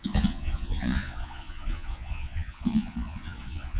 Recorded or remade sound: remade